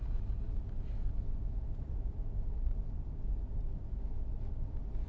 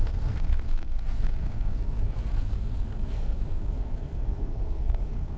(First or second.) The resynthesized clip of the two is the second